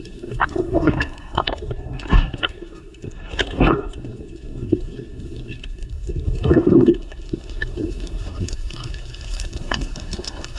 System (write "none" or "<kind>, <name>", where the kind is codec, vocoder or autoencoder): codec, SNAC